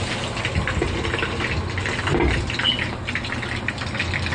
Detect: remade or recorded recorded